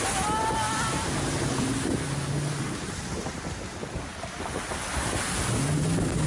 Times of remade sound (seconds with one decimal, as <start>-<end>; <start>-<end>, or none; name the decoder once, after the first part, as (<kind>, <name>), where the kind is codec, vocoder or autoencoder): none